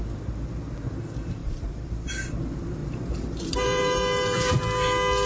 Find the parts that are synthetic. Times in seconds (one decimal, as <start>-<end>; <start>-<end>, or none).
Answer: 1.4-2.1; 2.8-4.5